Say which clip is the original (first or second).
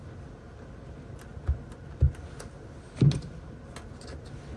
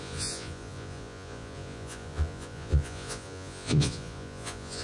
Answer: first